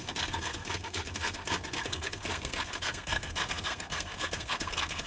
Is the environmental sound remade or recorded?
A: remade